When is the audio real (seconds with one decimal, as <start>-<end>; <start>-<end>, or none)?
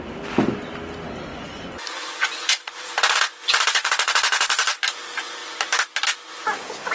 0.0-1.3; 4.8-6.9